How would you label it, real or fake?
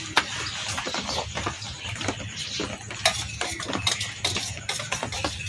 real